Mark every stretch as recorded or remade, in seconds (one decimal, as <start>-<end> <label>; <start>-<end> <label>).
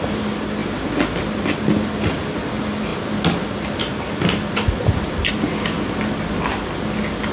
0.0-7.3 recorded